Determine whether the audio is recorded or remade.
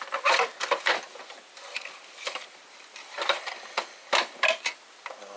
remade